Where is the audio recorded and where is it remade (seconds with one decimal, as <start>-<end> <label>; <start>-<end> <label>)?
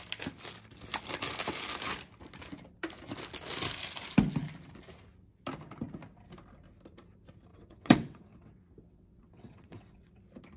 0.0-7.5 recorded; 7.5-10.2 remade; 10.2-10.6 recorded